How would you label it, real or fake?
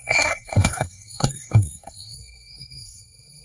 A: fake